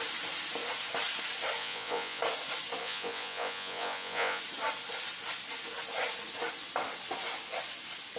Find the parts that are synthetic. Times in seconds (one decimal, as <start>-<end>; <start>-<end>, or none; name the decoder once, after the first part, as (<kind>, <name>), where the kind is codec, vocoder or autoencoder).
1.6-2.2 (vocoder, Vocos); 2.8-4.4